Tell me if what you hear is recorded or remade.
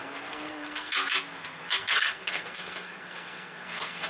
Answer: remade